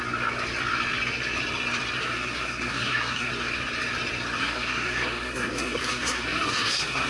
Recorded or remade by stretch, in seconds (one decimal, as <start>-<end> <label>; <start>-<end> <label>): 0.0-2.0 recorded; 2.0-3.3 remade; 3.3-4.4 recorded; 4.4-7.1 remade